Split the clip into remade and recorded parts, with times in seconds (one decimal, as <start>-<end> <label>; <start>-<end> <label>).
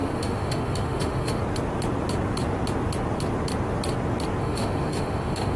0.0-1.4 remade; 1.4-4.4 recorded; 4.4-5.6 remade